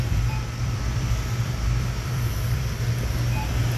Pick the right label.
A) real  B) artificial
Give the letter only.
B